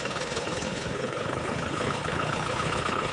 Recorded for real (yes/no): no